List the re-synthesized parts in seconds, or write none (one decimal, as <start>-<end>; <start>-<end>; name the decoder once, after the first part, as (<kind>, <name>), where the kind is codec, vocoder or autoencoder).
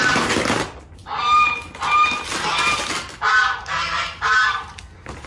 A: none